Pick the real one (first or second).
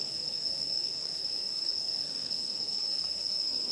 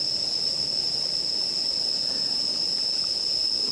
second